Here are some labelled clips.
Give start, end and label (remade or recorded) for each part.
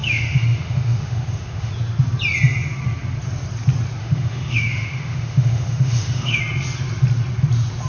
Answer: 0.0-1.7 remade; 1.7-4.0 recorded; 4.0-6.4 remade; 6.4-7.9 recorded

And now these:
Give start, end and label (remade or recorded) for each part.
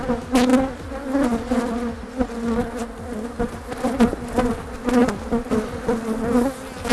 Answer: 0.0-6.9 recorded